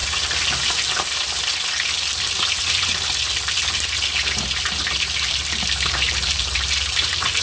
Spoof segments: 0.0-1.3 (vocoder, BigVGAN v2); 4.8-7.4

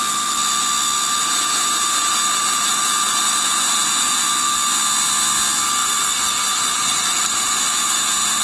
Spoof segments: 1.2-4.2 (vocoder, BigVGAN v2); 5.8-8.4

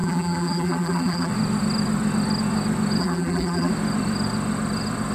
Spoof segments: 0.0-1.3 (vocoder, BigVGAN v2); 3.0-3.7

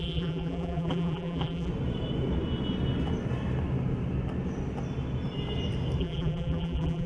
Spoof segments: 0.0-1.7 (vocoder, BigVGAN v2); 6.0-7.1

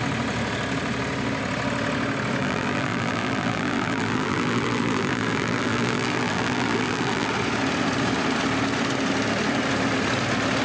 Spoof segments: 2.4-7.3 (vocoder, BigVGAN v2)